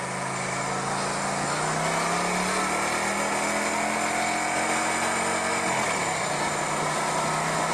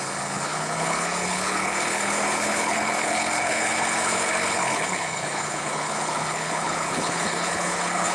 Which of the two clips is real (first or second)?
first